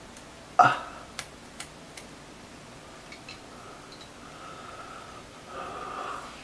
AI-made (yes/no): no